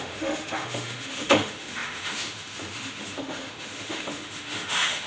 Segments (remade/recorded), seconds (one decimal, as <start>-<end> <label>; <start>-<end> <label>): 0.0-5.1 remade